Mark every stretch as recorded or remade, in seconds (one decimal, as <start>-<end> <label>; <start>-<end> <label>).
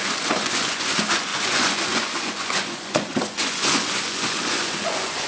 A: 0.0-5.3 remade